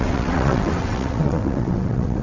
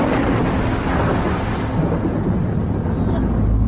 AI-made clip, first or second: first